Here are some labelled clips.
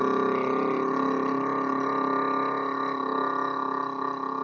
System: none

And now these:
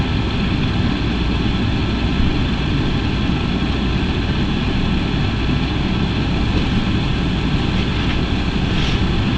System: none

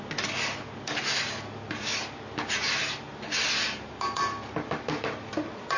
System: none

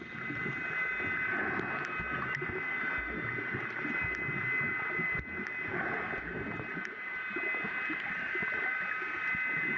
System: none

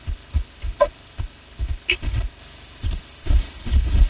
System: none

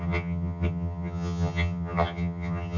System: vocoder, HiFi-GAN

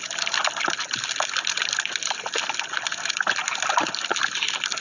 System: none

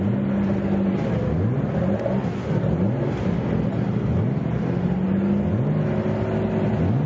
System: none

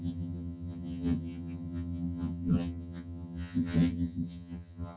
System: vocoder, HiFi-GAN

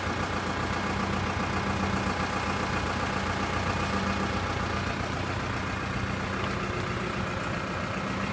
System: none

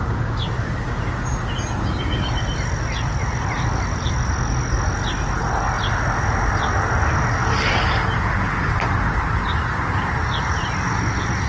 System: none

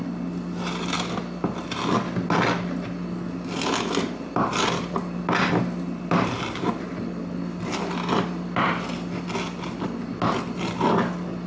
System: none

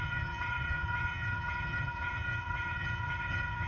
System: vocoder, HiFi-GAN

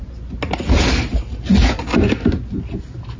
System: none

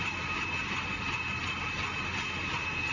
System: none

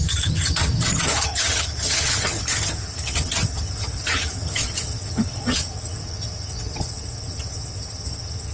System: vocoder, HiFi-GAN